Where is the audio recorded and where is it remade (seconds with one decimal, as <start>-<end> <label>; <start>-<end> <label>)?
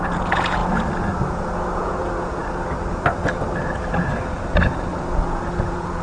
0.0-0.6 remade; 0.6-1.2 recorded; 1.2-2.4 remade; 2.4-4.9 recorded; 4.9-6.0 remade